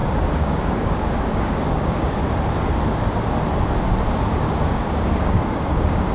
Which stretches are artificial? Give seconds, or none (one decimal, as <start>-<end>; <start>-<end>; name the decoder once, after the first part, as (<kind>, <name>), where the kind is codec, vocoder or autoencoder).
0.0-2.2 (codec, DAC); 4.1-6.1